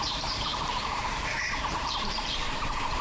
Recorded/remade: remade